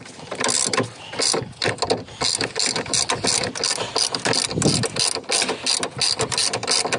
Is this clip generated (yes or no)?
no